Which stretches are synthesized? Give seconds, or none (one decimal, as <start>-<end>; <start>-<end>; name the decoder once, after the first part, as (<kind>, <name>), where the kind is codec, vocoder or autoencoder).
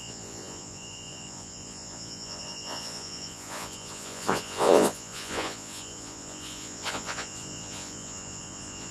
0.0-8.9 (vocoder, Vocos)